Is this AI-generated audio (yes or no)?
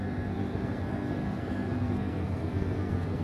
yes